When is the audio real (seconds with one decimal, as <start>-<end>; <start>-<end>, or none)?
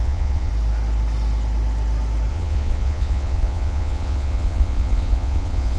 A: 0.5-2.3